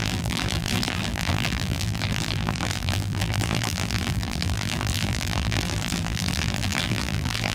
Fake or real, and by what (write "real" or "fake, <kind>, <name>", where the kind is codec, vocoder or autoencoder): fake, vocoder, BigVGAN v2